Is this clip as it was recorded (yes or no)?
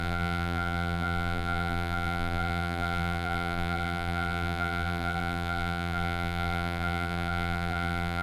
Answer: no